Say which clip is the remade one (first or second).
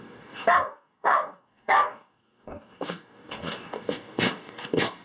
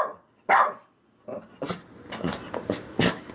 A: first